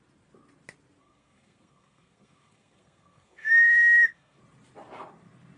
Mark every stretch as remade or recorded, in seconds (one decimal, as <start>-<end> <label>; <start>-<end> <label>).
0.0-1.0 recorded; 1.0-4.4 remade; 4.4-5.6 recorded

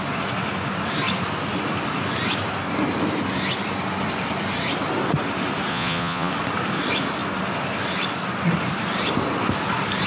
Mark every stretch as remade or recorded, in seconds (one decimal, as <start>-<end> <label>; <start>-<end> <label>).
0.0-5.7 recorded; 5.7-6.3 remade; 6.3-10.1 recorded

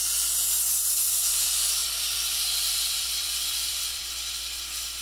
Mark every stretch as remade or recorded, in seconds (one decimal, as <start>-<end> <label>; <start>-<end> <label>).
0.0-1.8 recorded; 1.8-4.0 remade; 4.0-5.0 recorded

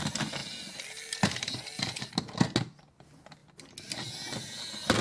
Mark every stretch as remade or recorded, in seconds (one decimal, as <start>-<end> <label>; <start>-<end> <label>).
0.0-5.0 recorded

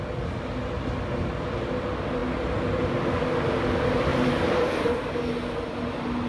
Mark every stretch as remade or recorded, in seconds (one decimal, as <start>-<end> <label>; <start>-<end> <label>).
0.0-4.1 recorded; 4.1-5.1 remade; 5.1-6.3 recorded

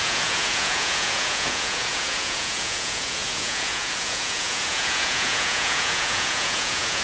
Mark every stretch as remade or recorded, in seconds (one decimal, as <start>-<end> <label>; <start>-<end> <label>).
0.0-7.0 remade

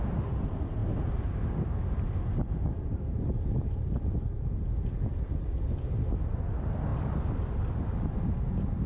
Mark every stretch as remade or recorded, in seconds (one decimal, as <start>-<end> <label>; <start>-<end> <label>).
0.0-8.9 recorded

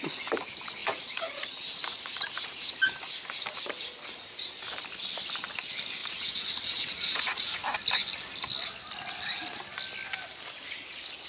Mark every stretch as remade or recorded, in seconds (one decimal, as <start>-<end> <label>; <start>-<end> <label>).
0.0-0.8 recorded; 0.8-2.7 remade; 2.7-6.0 recorded; 6.0-7.6 remade; 7.6-11.3 recorded